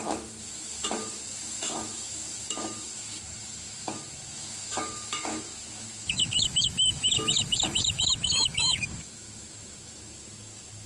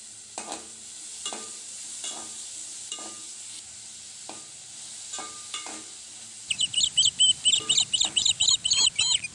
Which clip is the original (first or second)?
second